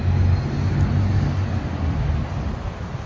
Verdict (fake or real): real